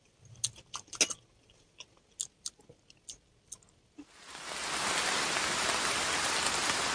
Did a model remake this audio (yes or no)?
no